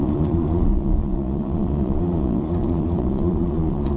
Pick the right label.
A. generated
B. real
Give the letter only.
A